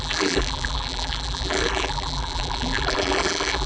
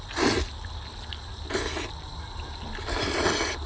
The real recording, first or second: second